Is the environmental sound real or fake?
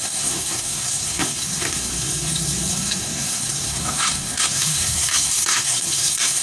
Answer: fake